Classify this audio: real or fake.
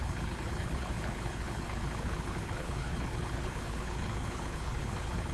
fake